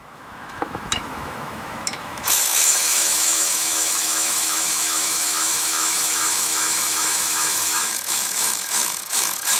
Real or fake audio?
fake